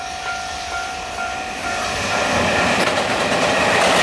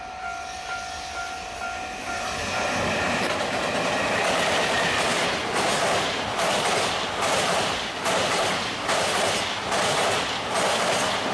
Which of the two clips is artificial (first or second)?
first